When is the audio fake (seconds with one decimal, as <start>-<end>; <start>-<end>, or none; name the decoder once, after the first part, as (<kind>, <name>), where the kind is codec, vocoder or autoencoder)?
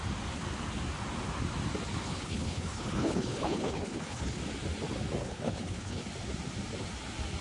2.0-4.4 (codec, HILCodec); 5.2-6.0